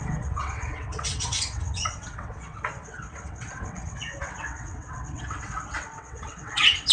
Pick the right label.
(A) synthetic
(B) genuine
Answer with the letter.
A